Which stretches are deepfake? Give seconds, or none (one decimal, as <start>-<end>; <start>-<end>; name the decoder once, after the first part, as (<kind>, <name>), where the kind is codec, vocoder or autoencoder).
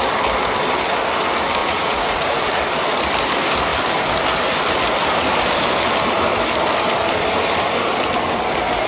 1.6-2.6 (vocoder, Vocos)